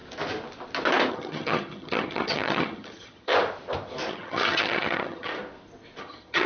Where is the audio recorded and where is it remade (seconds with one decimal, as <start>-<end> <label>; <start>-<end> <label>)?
0.0-1.1 recorded; 1.1-3.3 remade; 3.3-4.1 recorded; 4.1-5.3 remade; 5.3-6.0 recorded; 6.0-6.5 remade

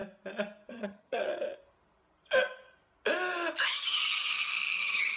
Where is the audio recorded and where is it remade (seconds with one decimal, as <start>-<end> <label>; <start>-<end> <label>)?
0.0-0.7 recorded; 0.7-1.2 remade; 1.2-3.6 recorded; 3.6-4.0 remade; 4.0-4.8 recorded; 4.8-5.2 remade

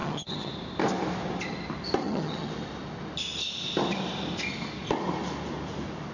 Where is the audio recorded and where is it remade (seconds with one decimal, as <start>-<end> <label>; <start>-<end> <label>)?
0.0-0.5 remade; 0.5-2.0 recorded; 2.0-2.5 remade; 2.5-6.1 recorded